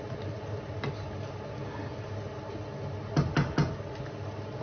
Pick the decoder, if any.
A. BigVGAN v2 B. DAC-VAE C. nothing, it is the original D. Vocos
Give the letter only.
C